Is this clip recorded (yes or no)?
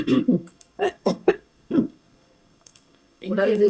no